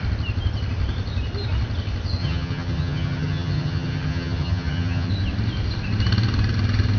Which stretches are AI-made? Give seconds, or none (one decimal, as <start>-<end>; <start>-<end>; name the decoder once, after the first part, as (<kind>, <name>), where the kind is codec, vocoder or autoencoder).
2.2-5.1 (vocoder, HiFi-GAN)